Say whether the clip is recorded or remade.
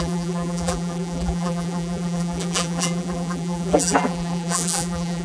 remade